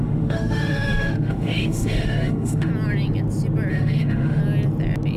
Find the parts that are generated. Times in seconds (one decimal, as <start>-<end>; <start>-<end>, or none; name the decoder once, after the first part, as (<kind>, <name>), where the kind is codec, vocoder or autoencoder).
0.0-2.7 (autoencoder, DAC-VAE); 3.7-4.4